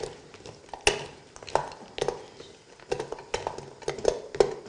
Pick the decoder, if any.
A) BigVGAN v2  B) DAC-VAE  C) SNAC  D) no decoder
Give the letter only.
D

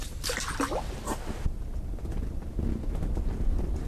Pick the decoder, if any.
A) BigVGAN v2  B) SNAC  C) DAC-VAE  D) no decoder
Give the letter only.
D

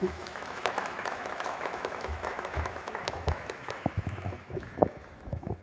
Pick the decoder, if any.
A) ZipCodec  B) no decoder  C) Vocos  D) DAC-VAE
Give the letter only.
D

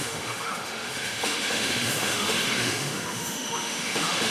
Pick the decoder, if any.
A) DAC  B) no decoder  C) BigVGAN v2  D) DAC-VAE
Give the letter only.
D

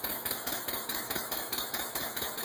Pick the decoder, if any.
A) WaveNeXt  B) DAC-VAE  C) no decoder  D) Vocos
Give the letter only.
B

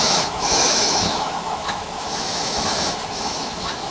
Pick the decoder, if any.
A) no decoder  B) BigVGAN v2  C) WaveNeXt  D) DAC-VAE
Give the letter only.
D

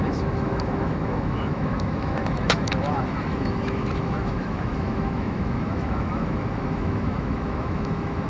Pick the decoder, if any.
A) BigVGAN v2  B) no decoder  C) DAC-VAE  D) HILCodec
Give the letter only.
C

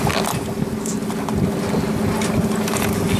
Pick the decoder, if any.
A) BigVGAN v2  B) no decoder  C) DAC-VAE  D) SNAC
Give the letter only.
B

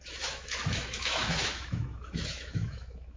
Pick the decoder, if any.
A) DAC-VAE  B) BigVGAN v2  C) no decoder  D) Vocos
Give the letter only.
A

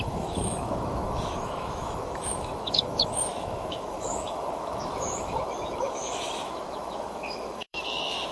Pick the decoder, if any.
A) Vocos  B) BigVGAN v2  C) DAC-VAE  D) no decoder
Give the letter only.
C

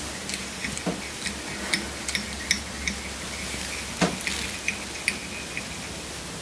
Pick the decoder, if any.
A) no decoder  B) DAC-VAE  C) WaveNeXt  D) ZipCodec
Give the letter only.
A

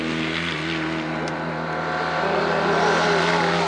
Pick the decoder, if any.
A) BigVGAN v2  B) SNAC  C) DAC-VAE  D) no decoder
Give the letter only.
D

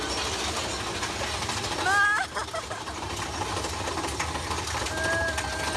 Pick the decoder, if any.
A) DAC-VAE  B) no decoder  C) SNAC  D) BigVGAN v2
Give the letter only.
B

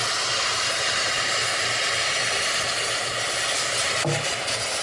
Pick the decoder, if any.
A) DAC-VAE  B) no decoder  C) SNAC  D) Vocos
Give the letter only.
B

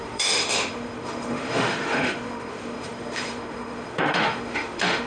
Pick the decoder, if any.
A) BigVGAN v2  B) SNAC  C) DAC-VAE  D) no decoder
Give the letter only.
C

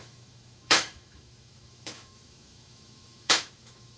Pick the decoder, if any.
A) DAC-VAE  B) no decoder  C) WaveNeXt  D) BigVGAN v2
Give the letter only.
A